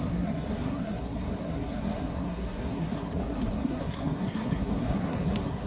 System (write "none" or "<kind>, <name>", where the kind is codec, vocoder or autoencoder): codec, SNAC